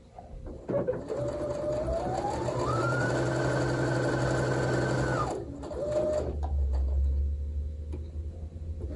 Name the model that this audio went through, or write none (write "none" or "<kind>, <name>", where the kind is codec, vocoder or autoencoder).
none